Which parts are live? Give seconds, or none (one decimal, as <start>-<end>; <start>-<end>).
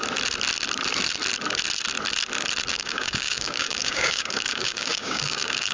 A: 0.0-2.7